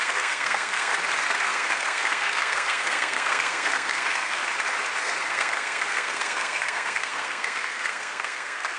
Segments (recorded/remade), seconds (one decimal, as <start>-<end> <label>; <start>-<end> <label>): 0.0-0.9 remade; 0.9-1.4 recorded; 1.4-4.4 remade; 4.4-5.0 recorded; 5.0-8.8 remade